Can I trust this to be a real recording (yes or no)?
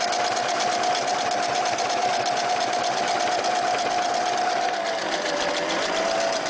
yes